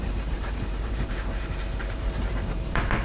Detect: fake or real fake